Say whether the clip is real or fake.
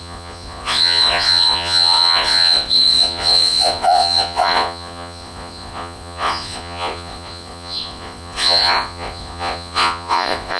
fake